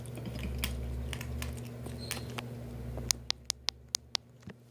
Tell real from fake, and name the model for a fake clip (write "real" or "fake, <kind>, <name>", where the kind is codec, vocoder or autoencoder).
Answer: real